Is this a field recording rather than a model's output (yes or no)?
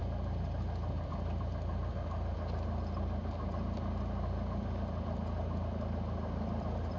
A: yes